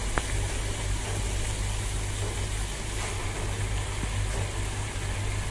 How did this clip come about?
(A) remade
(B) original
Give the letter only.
B